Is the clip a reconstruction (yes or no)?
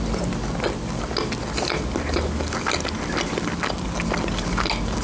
no